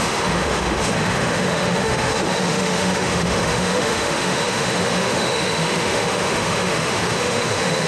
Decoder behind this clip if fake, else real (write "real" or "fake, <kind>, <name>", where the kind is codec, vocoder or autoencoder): fake, autoencoder, DAC-VAE